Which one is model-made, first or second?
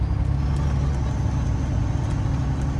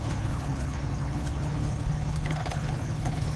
second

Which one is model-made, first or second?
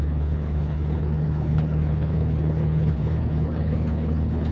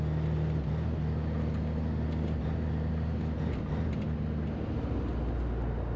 first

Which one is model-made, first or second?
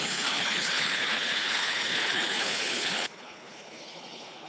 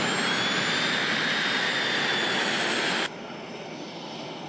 first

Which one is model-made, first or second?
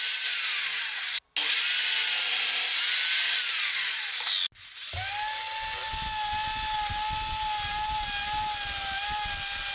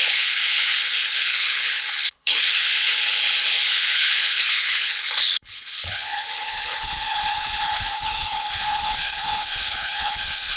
second